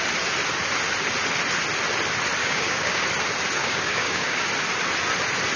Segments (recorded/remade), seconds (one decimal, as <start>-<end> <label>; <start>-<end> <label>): 0.0-2.4 recorded; 2.4-3.0 remade; 3.0-3.6 recorded; 3.6-4.5 remade; 4.5-5.6 recorded